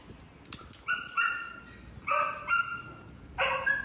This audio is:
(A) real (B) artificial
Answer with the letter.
A